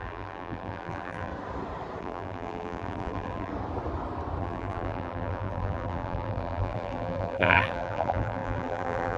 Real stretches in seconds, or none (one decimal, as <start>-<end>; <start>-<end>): 1.3-2.0; 3.5-4.4